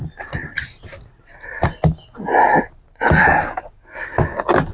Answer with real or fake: real